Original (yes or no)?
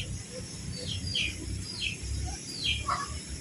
no